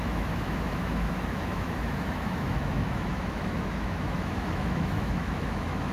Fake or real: fake